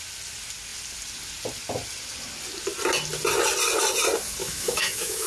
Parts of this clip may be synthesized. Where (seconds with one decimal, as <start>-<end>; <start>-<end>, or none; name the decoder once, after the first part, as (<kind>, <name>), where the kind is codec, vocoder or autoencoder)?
4.4-5.3 (autoencoder, DAC-VAE)

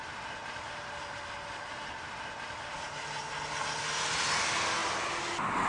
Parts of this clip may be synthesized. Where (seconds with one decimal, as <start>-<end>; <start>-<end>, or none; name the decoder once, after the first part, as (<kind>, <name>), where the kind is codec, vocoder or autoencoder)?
none

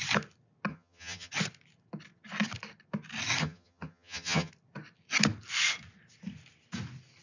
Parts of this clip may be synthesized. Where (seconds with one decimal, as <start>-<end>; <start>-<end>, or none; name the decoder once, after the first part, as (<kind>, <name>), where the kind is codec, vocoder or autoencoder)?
0.7-1.3 (vocoder, HiFi-GAN); 3.4-4.5

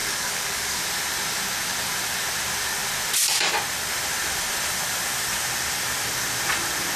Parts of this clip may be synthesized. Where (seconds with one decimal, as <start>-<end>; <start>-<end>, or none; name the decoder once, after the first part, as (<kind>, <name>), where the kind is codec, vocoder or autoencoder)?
0.0-0.8 (codec, DAC)

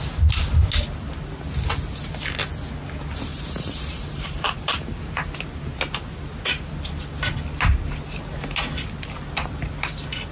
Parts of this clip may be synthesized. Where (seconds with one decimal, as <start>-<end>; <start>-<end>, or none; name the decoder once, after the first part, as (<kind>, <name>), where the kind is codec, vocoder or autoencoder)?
3.3-5.0 (vocoder, BigVGAN v2)